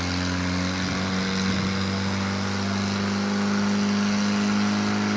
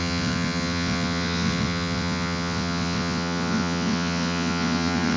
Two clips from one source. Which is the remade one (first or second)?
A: second